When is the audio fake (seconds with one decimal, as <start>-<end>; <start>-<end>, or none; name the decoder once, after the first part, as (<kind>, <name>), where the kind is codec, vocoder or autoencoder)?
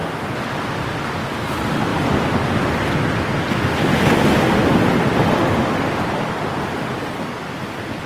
5.2-5.8 (autoencoder, DAC-VAE)